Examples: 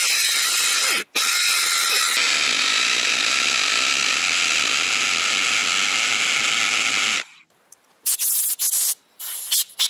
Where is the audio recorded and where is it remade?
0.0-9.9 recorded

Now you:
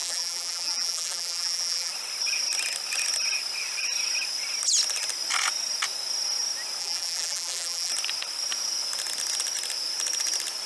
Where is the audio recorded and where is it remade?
0.0-1.9 remade; 1.9-6.8 recorded; 6.8-7.9 remade; 7.9-10.7 recorded

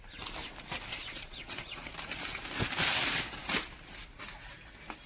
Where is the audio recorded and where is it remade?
0.0-0.9 recorded; 0.9-1.9 remade; 1.9-5.1 recorded